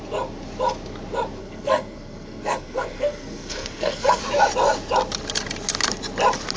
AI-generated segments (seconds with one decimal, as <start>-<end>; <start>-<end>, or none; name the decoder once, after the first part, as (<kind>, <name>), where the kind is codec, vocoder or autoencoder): 1.4-4.2 (codec, SNAC)